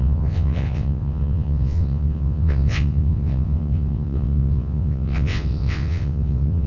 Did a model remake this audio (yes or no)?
yes